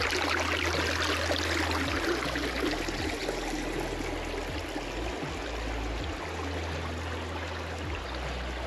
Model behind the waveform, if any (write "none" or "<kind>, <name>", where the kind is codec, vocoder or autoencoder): none